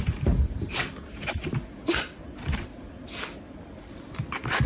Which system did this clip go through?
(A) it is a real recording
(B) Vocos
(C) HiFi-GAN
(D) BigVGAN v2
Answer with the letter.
D